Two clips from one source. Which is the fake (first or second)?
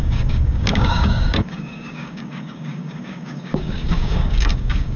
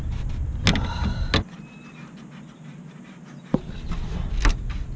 first